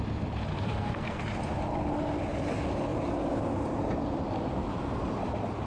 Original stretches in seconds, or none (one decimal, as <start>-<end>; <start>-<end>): 0.0-0.5; 1.2-5.7